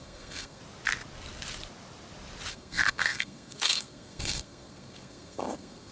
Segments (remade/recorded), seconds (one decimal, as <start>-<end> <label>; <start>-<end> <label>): 0.0-0.6 remade; 0.6-2.5 recorded; 2.5-5.9 remade